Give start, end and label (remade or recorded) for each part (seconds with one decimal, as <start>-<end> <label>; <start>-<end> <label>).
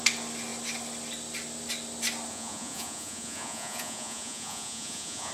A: 0.0-2.3 recorded; 2.3-5.3 remade